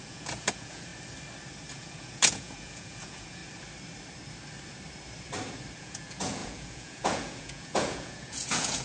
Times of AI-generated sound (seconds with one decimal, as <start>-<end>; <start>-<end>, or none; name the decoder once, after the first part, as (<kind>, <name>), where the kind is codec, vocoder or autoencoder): 0.0-0.9 (vocoder, Vocos); 1.7-3.4; 5.8-8.8